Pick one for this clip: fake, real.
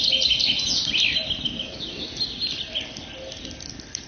real